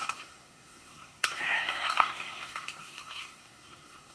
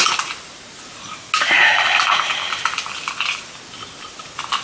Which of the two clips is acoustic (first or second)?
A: second